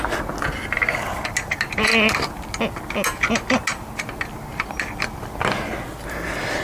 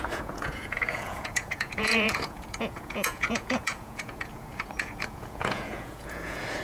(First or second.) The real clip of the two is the first